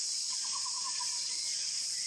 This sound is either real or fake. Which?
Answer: fake